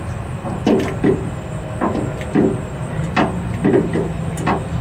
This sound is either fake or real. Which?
real